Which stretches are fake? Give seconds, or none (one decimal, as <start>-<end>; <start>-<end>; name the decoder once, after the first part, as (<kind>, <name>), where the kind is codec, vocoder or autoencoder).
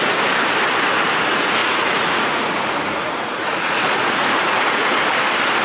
1.6-5.0 (vocoder, Vocos)